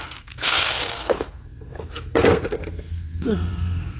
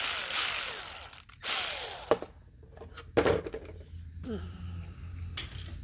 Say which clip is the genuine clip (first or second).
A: second